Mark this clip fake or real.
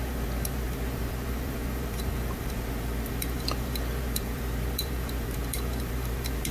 fake